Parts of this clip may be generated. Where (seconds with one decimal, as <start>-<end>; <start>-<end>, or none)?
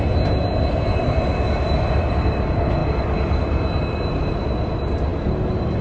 none